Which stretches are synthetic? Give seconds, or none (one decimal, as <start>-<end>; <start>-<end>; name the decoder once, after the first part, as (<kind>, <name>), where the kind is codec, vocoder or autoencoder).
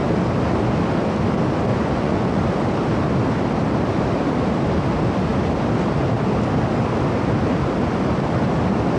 1.7-2.4 (vocoder, Vocos)